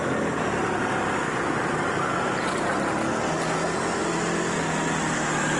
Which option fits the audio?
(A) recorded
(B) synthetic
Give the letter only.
A